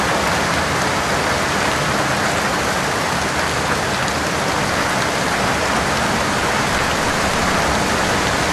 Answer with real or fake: real